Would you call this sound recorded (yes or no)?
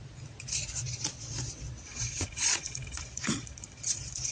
no